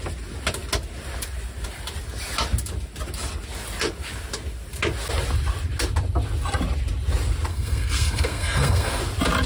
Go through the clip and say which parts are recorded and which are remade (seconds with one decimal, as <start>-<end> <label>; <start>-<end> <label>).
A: 0.0-7.5 recorded; 7.5-9.0 remade; 9.0-9.5 recorded